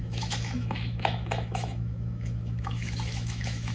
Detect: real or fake fake